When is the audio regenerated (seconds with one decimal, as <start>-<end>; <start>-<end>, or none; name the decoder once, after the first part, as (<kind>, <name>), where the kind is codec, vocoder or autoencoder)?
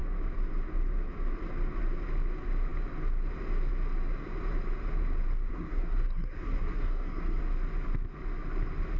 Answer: 5.5-7.4 (codec, SNAC)